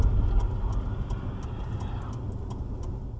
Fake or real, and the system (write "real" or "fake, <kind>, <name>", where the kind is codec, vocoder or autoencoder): real